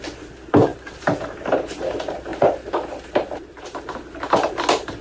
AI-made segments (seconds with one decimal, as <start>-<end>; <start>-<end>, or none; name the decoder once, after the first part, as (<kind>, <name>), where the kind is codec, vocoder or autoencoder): 0.7-1.3 (vocoder, BigVGAN v2); 2.3-4.2